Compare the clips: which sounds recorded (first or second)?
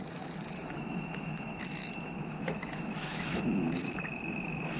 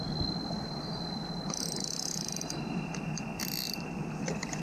second